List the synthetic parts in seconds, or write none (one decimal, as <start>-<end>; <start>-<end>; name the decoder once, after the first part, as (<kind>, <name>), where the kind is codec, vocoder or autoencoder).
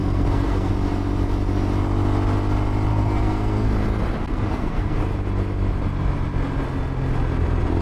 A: 0.0-0.7 (codec, SNAC); 2.9-3.7; 4.2-5.0